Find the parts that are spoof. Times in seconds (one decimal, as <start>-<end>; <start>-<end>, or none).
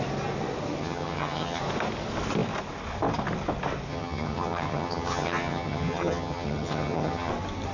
0.8-1.6; 3.9-7.3